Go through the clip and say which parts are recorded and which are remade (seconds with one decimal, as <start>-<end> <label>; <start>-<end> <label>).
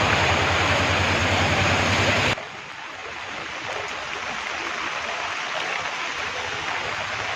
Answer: 0.0-1.2 recorded; 1.2-1.8 remade; 1.8-3.0 recorded; 3.0-6.3 remade; 6.3-7.4 recorded